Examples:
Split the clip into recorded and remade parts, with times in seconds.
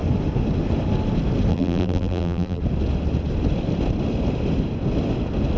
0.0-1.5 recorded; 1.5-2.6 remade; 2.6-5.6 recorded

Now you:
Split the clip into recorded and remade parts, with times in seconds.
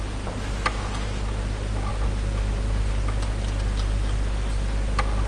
0.0-5.3 recorded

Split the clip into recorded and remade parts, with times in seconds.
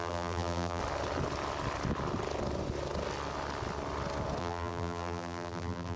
0.0-0.8 remade; 0.8-4.4 recorded; 4.4-6.0 remade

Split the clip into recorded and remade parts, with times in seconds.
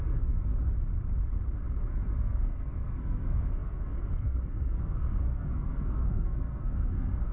0.0-0.5 remade; 0.5-2.1 recorded; 2.1-7.3 remade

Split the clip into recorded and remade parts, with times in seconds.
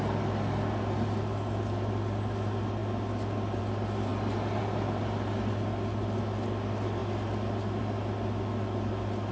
0.0-9.3 recorded